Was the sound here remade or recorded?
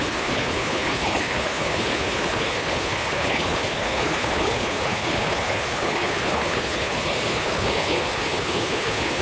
remade